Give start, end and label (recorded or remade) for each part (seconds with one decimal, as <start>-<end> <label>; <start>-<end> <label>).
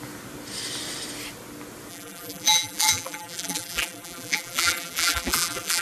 0.0-1.9 recorded; 1.9-5.8 remade